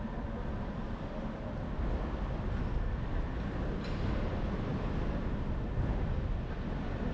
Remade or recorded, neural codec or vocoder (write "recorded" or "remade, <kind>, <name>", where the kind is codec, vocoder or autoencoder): recorded